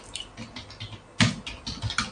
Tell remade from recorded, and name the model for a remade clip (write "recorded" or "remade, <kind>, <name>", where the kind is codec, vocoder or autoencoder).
recorded